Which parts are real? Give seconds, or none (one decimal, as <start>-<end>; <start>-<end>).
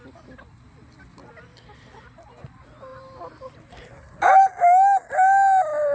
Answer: 0.0-5.9